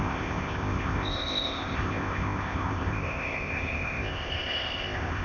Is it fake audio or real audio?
fake